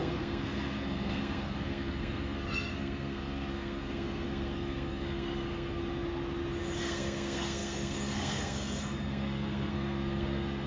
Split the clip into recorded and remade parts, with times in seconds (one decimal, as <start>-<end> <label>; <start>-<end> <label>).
0.0-5.8 remade; 5.8-6.8 recorded; 6.8-10.7 remade